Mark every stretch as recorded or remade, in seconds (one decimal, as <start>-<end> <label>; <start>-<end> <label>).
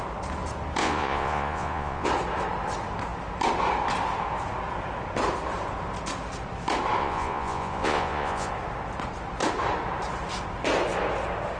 0.0-0.8 recorded; 0.8-2.1 remade; 2.1-7.0 recorded; 7.0-8.5 remade; 8.5-11.6 recorded